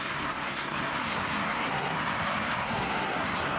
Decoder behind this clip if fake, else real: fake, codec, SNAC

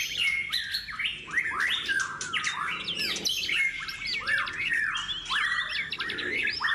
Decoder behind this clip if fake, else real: real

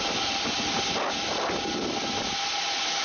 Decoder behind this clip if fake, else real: real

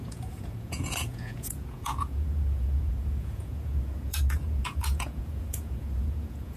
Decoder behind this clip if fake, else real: fake, vocoder, Vocos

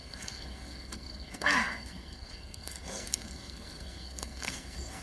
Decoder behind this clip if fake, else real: fake, codec, SNAC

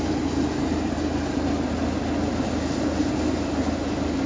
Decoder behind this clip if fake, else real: real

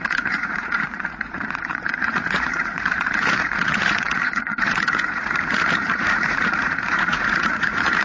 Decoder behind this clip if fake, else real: fake, vocoder, Vocos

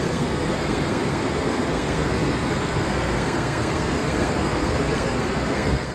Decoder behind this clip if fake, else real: fake, codec, SNAC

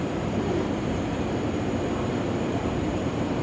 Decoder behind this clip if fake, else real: fake, vocoder, BigVGAN v2